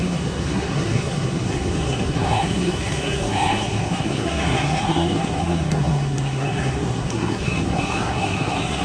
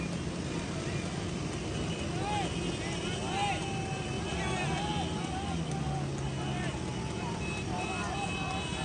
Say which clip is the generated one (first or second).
first